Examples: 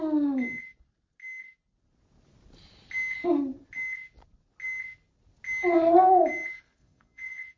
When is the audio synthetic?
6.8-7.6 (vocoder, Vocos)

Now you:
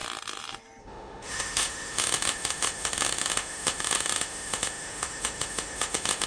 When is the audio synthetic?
0.8-6.3 (autoencoder, DAC-VAE)

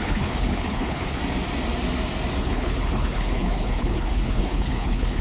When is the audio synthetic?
0.0-1.2 (codec, HILCodec); 2.4-5.2

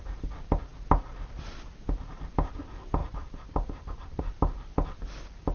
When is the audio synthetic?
3.0-4.2 (vocoder, BigVGAN v2)

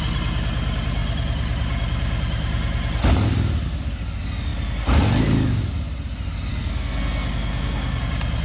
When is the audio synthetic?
6.5-8.0 (codec, SNAC)